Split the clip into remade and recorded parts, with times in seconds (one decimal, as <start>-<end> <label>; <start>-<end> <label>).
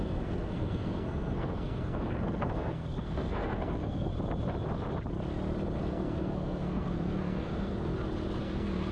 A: 0.0-4.1 remade; 4.1-5.9 recorded; 5.9-7.9 remade; 7.9-8.4 recorded; 8.4-8.9 remade